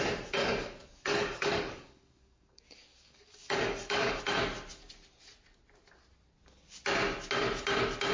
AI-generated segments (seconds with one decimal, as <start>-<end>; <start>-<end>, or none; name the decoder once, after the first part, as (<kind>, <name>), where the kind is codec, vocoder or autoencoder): 0.4-4.2 (codec, DAC)